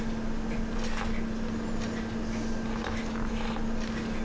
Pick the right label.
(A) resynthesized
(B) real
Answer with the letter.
B